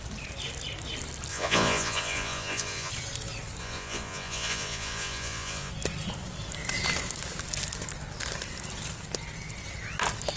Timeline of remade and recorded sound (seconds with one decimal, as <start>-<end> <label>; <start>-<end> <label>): 0.0-1.3 recorded; 1.3-2.9 remade; 2.9-3.6 recorded; 3.6-5.7 remade; 5.7-10.4 recorded